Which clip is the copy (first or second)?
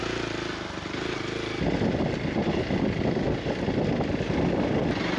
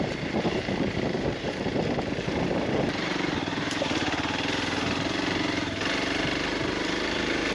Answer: second